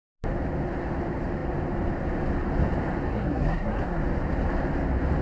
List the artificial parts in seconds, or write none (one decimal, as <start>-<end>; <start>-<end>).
3.1-4.0